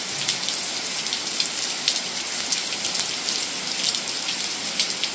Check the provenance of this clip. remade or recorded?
recorded